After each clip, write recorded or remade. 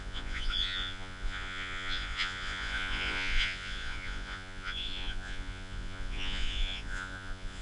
remade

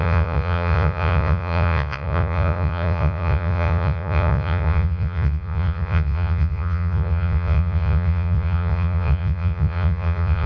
remade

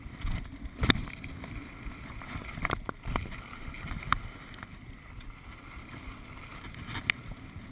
recorded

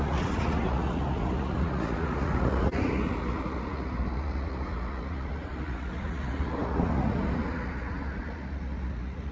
remade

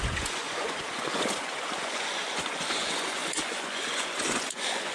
remade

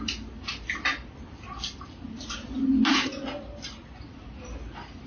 recorded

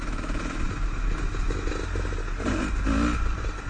recorded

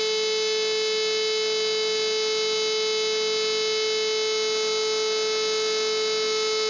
recorded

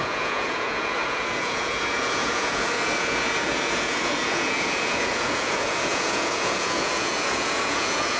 remade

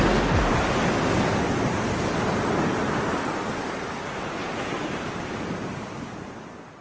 recorded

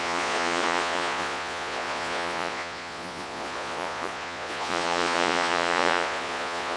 remade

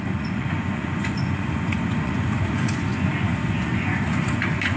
remade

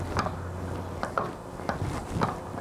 recorded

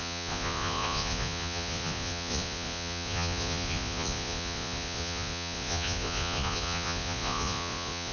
remade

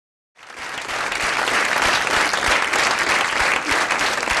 recorded